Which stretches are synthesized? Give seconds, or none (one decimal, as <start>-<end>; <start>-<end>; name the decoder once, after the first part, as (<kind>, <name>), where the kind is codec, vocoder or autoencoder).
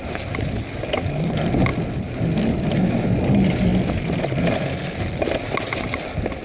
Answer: none